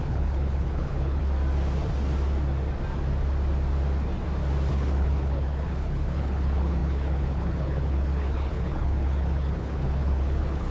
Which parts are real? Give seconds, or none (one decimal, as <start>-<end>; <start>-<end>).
1.2-4.7